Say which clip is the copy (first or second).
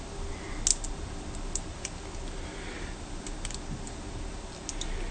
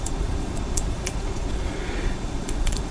second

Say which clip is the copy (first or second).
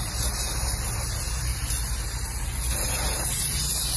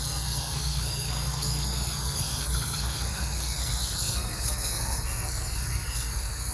second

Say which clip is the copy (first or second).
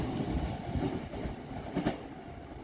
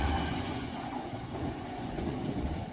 second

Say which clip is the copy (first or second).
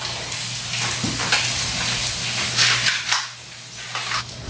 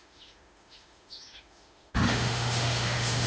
second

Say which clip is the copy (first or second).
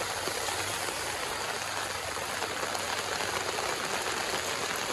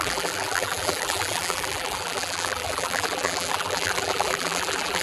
second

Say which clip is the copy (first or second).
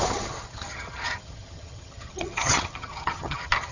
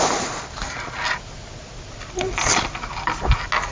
first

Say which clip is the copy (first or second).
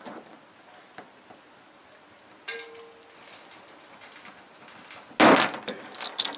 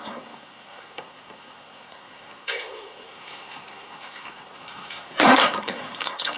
second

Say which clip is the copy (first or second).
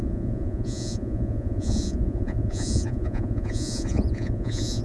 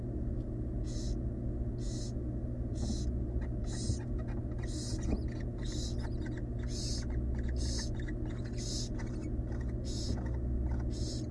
first